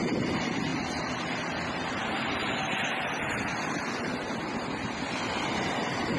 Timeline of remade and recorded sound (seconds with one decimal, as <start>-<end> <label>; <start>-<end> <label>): 0.0-6.2 recorded